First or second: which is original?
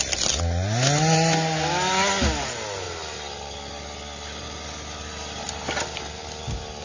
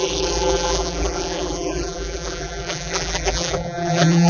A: first